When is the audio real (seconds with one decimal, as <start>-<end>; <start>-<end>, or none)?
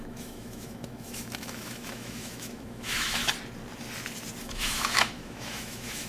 3.2-4.4